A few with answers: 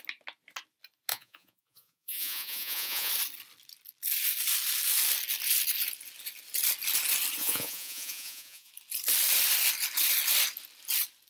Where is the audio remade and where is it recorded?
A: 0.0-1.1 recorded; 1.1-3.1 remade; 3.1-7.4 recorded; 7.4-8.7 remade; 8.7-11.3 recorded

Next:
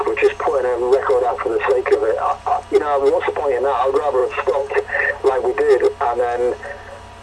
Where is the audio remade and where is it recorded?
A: 0.0-4.2 recorded; 4.2-4.9 remade; 4.9-7.2 recorded

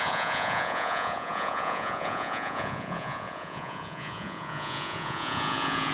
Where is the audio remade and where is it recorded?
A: 0.0-5.9 remade

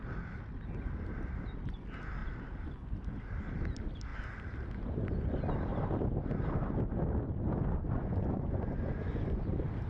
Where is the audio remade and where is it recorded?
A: 0.0-8.0 recorded; 8.0-9.4 remade; 9.4-9.9 recorded

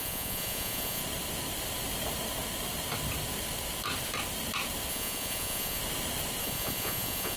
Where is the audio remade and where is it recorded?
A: 0.0-1.0 remade; 1.0-4.9 recorded; 4.9-5.8 remade; 5.8-6.4 recorded; 6.4-7.4 remade

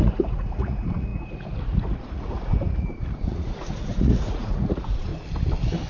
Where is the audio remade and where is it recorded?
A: 0.0-5.1 remade; 5.1-5.9 recorded